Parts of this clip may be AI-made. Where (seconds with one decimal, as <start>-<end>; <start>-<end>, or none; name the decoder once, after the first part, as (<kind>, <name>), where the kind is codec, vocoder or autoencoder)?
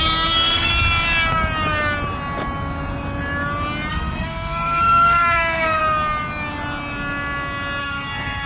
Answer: 0.0-0.7 (codec, SNAC); 3.9-5.8; 7.8-8.5